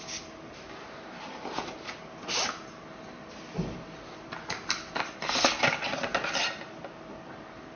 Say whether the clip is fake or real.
real